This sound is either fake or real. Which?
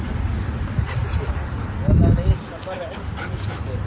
real